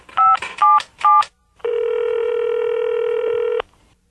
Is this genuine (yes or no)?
no